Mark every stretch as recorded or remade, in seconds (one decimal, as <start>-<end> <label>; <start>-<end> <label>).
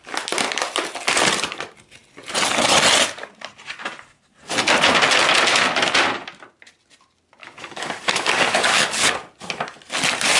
0.0-7.4 recorded; 7.4-9.1 remade; 9.1-10.4 recorded